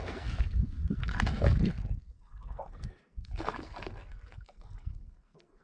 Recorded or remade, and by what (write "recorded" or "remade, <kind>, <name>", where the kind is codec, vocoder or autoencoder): remade, codec, SNAC